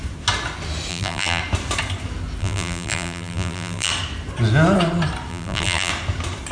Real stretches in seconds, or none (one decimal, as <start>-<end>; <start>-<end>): 0.0-0.9; 1.4-2.4; 3.9-5.3; 5.9-6.5